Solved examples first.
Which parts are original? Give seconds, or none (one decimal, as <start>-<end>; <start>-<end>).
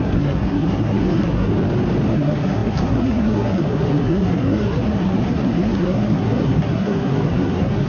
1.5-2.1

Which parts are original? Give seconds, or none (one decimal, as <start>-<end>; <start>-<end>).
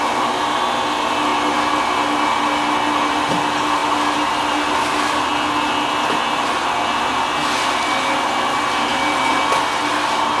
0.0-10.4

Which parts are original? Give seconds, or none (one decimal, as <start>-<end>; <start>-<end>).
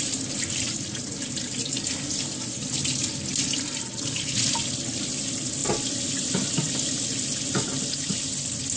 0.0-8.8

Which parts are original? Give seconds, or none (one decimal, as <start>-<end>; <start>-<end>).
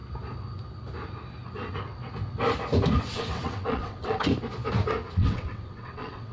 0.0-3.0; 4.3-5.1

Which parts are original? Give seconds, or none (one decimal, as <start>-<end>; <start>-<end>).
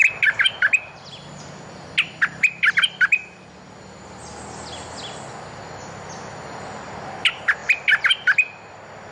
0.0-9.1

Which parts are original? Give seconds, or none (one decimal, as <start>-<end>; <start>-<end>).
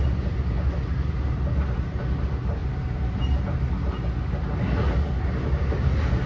0.0-6.3